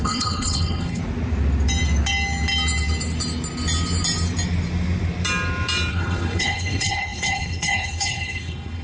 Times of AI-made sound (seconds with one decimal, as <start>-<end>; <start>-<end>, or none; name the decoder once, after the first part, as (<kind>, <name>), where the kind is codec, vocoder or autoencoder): 0.0-1.0 (codec, HILCodec); 5.9-8.8